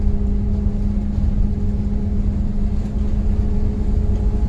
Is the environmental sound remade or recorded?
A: recorded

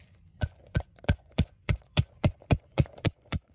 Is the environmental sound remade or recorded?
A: remade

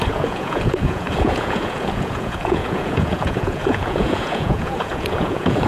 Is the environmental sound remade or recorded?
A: remade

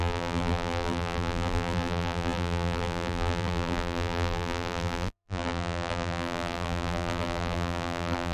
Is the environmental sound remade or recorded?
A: remade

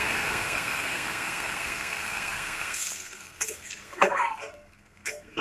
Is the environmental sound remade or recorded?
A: remade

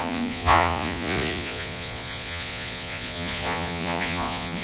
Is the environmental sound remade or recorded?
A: remade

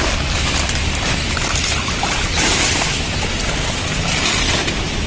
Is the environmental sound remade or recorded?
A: recorded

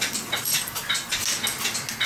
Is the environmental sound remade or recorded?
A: recorded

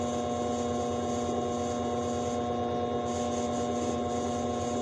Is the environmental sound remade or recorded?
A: recorded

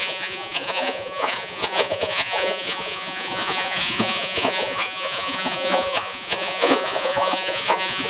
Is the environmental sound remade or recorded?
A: remade